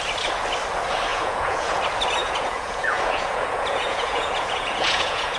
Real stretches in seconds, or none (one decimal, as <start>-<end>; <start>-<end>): 0.0-1.1; 1.8-2.2